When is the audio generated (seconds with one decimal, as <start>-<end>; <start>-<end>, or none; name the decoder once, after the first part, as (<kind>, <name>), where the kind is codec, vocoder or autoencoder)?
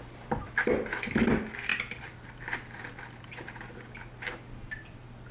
none